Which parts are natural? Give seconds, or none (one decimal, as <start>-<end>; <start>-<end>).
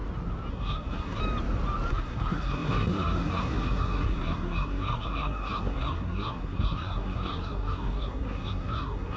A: 0.0-0.5; 1.2-1.9